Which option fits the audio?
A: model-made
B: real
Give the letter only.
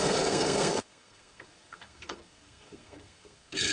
A